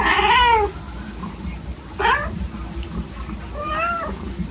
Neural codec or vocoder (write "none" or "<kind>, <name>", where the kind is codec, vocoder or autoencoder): none